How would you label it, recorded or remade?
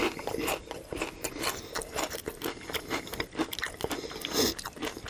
recorded